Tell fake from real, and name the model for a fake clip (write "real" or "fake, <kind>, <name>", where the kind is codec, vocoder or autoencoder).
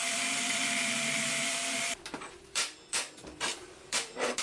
fake, vocoder, BigVGAN v2